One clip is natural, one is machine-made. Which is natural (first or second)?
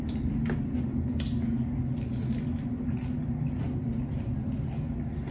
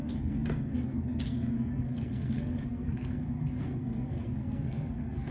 first